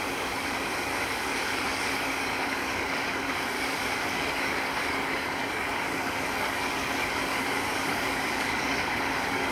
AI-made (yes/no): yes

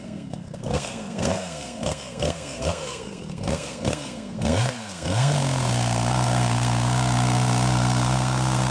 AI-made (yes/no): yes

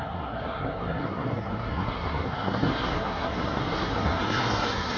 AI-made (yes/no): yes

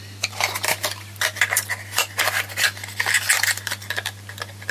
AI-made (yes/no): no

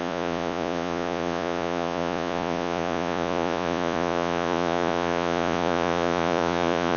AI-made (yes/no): yes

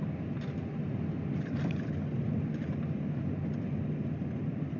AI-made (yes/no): no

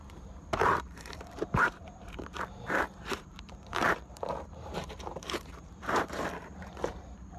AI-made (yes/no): yes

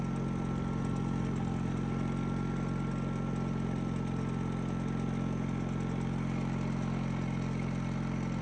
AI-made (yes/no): no